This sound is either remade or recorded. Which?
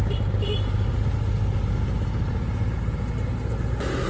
recorded